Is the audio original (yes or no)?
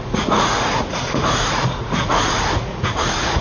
no